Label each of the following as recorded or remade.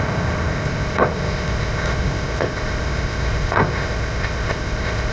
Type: remade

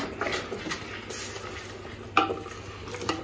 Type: recorded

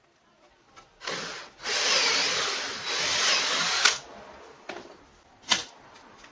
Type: recorded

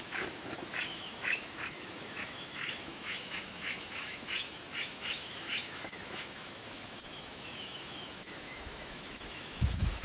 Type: remade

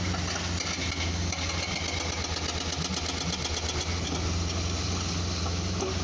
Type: recorded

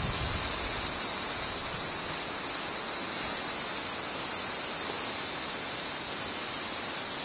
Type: recorded